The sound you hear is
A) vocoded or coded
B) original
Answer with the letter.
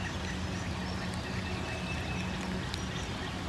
B